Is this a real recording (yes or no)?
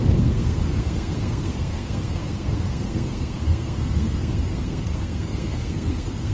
no